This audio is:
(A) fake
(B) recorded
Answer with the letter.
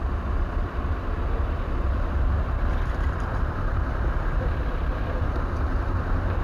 A